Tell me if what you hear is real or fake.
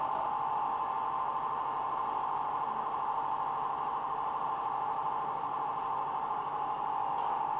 real